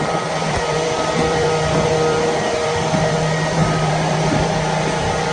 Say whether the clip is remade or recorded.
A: remade